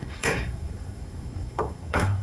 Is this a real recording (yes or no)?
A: no